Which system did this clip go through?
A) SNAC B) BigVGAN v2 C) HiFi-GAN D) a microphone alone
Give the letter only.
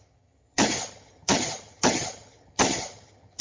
C